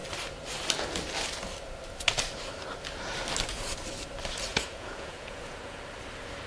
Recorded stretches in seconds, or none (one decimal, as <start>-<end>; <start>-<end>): 0.0-4.5; 5.8-6.5